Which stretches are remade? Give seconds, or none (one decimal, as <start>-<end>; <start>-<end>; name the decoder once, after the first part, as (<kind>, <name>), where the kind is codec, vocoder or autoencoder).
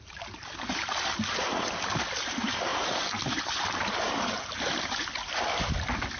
none